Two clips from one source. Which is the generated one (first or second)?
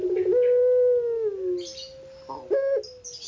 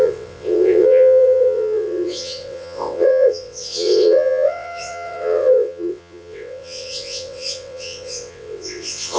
second